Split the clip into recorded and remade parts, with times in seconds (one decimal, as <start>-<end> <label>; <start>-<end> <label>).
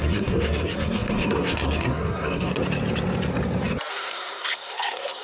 0.0-2.5 remade; 2.5-3.9 recorded; 3.9-5.2 remade